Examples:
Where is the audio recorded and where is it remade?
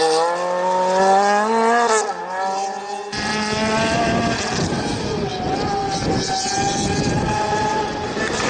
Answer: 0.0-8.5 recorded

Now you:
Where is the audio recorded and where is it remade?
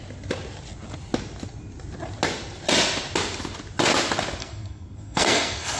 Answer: 0.0-4.4 recorded; 4.4-5.8 remade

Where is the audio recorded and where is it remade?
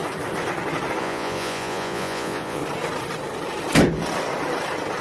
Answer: 0.0-1.0 recorded; 1.0-2.6 remade; 2.6-5.0 recorded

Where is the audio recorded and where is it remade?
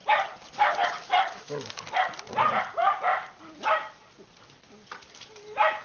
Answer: 0.0-5.8 recorded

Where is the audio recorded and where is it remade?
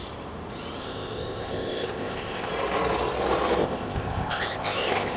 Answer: 0.0-0.8 recorded; 0.8-2.5 remade; 2.5-3.6 recorded; 3.6-5.2 remade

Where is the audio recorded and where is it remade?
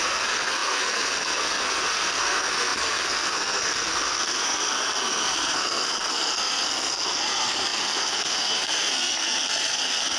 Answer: 0.0-10.2 remade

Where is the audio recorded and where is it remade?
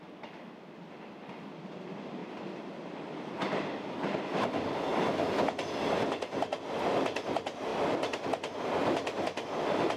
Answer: 0.0-10.0 recorded